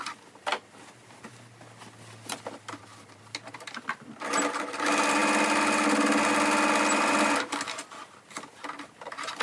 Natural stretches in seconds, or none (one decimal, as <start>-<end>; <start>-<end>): 0.0-9.4